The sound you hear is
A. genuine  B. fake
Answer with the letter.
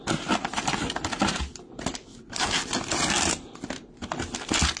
A